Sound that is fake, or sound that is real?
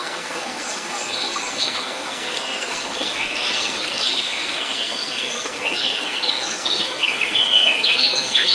fake